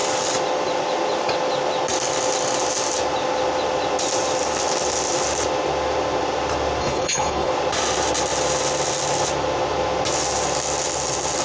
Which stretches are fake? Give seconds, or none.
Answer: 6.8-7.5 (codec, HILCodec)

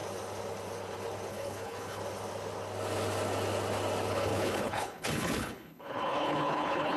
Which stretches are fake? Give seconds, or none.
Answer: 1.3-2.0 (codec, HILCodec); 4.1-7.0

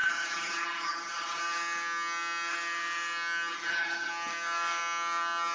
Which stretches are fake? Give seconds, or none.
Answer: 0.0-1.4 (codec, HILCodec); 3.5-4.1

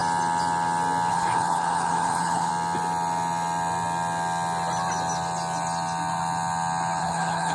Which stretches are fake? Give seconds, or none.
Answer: 1.1-2.5 (codec, HILCodec); 7.0-7.5

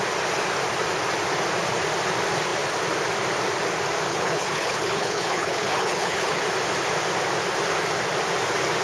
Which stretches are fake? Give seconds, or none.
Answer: 4.1-6.4 (codec, HILCodec)

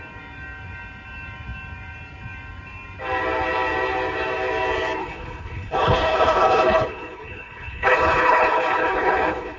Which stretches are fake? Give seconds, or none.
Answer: 5.0-9.6 (codec, HILCodec)

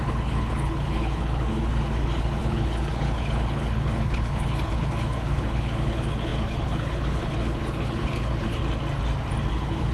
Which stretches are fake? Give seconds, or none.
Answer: 0.0-8.6 (codec, HILCodec); 9.5-9.9